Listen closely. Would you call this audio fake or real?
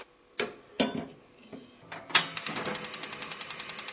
real